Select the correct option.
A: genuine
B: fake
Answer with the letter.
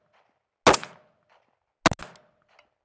A